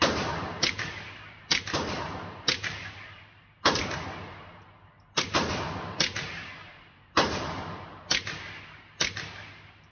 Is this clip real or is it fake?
real